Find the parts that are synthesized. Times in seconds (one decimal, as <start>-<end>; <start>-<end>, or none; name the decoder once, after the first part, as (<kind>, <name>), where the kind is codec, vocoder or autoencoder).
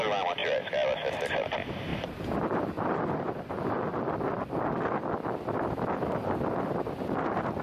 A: none